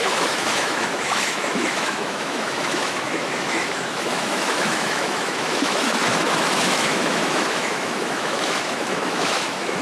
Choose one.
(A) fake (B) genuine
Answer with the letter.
A